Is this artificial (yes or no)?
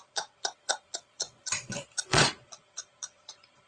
yes